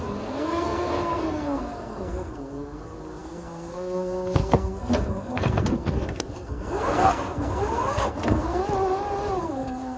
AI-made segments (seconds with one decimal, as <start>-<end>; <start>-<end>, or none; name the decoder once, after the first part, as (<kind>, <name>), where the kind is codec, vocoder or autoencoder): 0.0-8.6 (codec, SNAC); 9.4-10.0